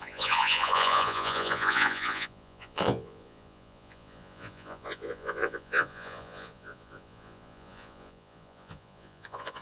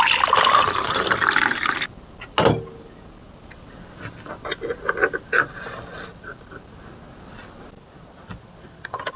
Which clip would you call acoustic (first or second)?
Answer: second